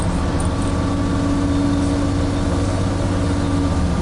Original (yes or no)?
yes